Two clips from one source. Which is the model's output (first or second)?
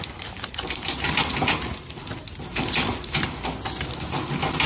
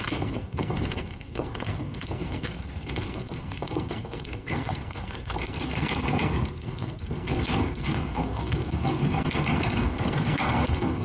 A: second